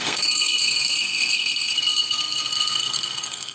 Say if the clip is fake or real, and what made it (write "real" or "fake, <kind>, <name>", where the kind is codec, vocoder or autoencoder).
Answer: fake, codec, SNAC